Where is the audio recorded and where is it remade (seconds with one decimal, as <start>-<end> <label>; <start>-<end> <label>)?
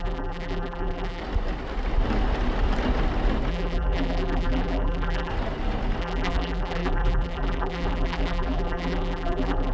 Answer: 0.0-1.2 remade; 1.2-3.5 recorded; 3.5-5.3 remade; 5.3-6.0 recorded; 6.0-9.7 remade